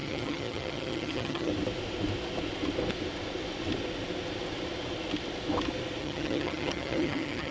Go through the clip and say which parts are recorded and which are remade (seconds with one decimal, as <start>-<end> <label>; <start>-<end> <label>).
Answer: 0.0-1.5 remade; 1.5-6.0 recorded; 6.0-7.5 remade